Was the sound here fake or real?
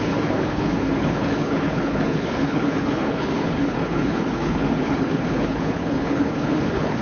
fake